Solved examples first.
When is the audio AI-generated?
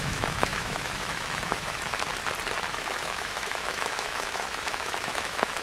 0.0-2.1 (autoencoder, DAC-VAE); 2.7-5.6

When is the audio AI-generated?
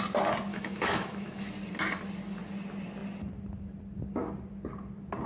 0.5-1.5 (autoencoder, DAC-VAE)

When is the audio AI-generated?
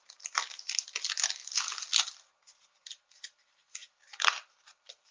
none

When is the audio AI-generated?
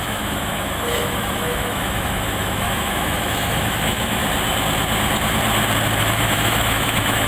0.0-4.2 (autoencoder, DAC-VAE); 6.0-7.3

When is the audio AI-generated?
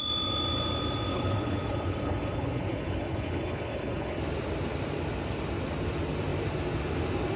1.1-4.2 (codec, HILCodec)